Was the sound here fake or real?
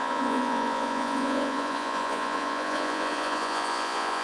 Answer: fake